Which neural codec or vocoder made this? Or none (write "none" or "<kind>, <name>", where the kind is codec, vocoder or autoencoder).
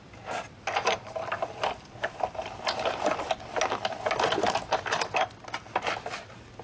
none